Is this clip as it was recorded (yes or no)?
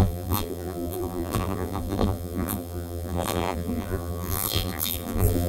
no